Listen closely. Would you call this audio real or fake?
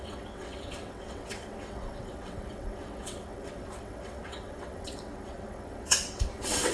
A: fake